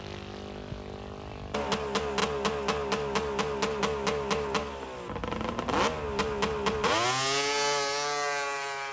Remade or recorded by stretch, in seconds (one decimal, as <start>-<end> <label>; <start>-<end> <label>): 0.0-8.9 recorded